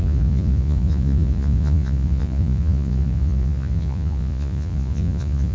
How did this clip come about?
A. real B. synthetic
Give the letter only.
B